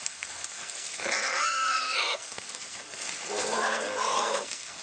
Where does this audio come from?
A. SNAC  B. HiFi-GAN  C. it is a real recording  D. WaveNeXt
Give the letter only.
A